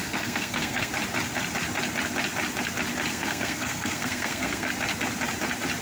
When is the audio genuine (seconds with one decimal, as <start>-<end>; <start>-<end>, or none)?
0.9-3.1; 4.7-5.8